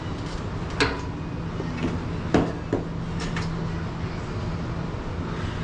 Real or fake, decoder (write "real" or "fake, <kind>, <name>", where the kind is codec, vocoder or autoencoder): real